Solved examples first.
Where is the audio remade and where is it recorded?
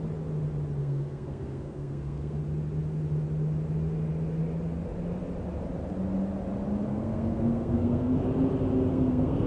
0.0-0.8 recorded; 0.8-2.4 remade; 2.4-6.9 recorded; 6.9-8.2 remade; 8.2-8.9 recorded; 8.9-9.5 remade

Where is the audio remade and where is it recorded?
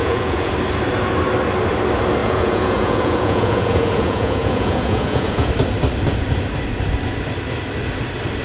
0.0-0.5 remade; 0.5-2.2 recorded; 2.2-5.5 remade; 5.5-8.4 recorded